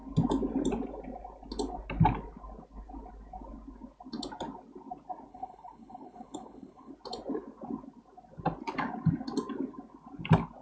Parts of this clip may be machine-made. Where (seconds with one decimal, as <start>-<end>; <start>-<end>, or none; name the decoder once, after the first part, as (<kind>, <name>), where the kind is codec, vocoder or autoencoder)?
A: 5.3-6.9 (codec, HILCodec)